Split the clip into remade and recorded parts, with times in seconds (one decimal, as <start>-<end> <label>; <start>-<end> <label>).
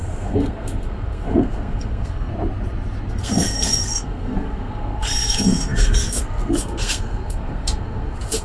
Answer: 0.0-2.3 remade; 2.3-3.1 recorded; 3.1-8.4 remade